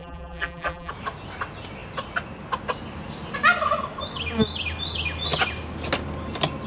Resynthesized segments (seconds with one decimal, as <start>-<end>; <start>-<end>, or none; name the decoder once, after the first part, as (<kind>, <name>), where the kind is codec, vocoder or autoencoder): 0.0-0.9 (vocoder, BigVGAN v2)